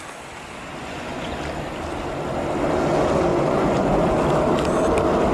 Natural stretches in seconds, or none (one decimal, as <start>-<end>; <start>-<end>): 0.0-0.8; 1.4-3.3; 4.2-5.3